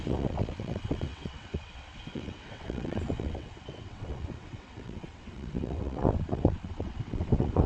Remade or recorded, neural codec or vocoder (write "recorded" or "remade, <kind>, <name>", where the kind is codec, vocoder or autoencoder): remade, vocoder, WaveNeXt